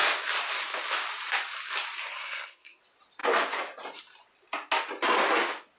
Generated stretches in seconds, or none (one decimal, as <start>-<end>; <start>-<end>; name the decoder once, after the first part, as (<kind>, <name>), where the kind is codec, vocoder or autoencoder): 2.1-2.8 (codec, SNAC)